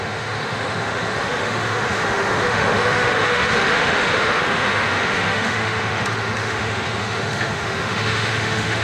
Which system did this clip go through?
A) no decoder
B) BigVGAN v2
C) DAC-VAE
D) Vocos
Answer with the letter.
C